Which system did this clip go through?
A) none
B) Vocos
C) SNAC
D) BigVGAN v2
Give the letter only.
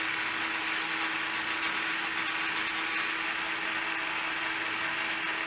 A